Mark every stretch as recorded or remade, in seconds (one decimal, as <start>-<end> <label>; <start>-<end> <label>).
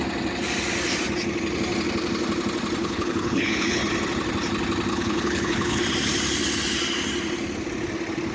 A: 0.0-2.8 recorded; 2.8-3.8 remade; 3.8-4.9 recorded; 4.9-5.8 remade; 5.8-8.3 recorded